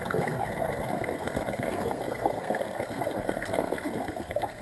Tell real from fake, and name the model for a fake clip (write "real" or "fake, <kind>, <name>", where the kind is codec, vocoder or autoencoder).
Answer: fake, codec, SNAC